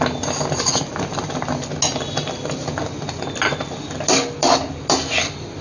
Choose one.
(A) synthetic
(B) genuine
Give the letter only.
B